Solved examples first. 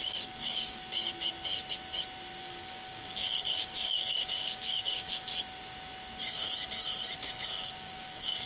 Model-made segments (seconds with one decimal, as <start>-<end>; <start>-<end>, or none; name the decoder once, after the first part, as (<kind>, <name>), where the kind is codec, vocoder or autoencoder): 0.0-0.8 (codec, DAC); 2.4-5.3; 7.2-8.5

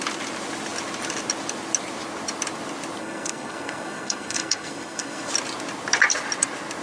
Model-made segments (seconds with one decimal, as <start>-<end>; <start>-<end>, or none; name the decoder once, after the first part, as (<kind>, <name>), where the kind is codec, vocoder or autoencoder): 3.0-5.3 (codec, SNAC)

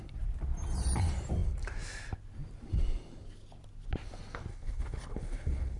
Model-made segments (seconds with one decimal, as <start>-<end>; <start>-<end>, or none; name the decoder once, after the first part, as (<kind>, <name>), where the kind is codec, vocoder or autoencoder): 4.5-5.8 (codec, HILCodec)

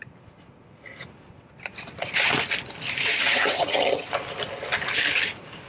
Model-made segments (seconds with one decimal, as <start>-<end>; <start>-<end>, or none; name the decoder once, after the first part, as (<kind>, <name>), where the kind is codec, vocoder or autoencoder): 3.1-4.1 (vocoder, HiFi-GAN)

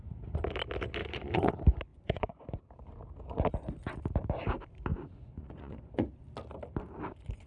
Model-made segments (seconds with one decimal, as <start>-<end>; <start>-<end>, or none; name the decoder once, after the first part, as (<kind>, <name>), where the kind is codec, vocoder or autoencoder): 1.0-1.5 (vocoder, Vocos); 1.9-2.6; 4.9-6.1